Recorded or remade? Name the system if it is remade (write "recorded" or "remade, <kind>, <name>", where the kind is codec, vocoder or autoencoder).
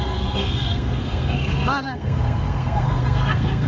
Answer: remade, codec, SNAC